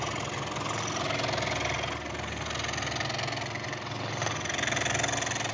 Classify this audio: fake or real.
real